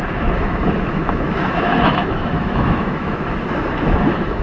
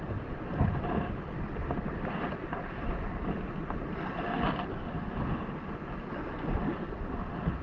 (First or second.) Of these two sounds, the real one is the second